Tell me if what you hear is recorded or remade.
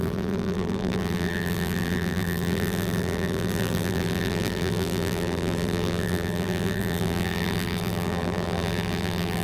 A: remade